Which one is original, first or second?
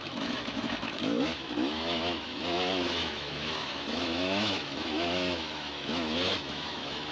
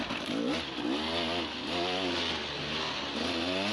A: second